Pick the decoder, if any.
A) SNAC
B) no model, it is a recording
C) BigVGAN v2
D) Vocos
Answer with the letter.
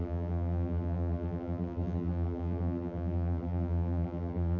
C